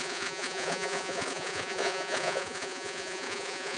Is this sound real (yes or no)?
no